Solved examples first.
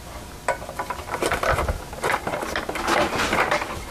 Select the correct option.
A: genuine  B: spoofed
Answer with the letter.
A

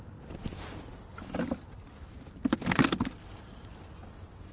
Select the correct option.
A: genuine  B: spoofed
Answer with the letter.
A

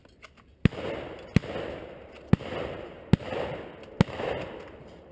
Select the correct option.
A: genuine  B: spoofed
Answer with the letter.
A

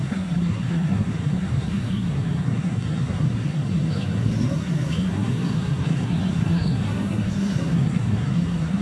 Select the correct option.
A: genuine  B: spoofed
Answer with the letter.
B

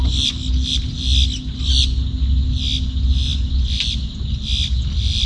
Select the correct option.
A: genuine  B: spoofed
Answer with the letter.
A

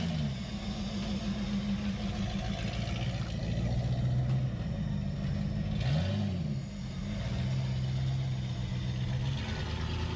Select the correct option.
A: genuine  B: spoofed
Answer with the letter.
A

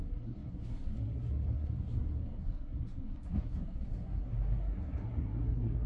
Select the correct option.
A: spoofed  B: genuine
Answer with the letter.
A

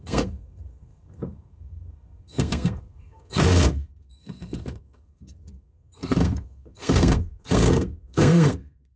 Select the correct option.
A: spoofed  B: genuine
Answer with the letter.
A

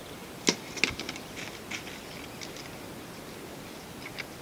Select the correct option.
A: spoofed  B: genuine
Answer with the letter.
B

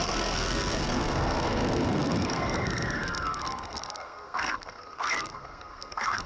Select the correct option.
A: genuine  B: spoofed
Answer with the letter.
B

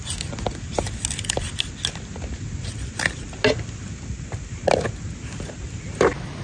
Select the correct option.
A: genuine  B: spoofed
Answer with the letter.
A